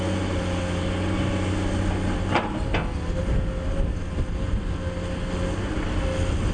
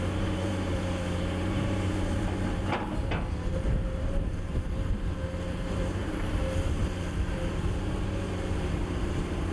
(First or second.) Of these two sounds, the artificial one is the second